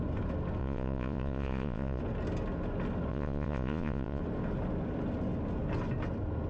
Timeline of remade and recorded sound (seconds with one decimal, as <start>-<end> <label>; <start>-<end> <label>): 0.0-0.6 recorded; 0.6-2.0 remade; 2.0-3.1 recorded; 3.1-4.2 remade; 4.2-6.5 recorded